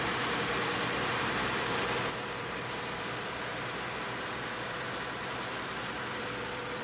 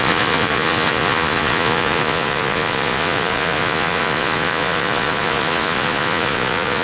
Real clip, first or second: first